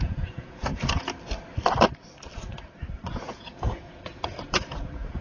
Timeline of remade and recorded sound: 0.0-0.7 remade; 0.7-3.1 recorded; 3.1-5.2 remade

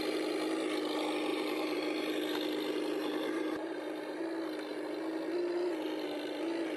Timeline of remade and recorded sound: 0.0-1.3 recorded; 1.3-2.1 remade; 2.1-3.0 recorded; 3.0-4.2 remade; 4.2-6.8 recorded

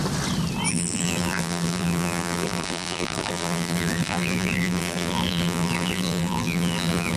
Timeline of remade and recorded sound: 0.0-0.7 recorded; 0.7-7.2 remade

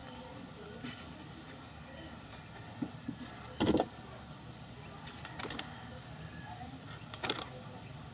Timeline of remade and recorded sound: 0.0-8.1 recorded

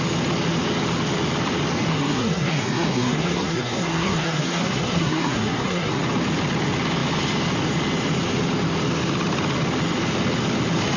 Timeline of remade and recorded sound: 0.0-1.9 recorded; 1.9-6.0 remade; 6.0-11.0 recorded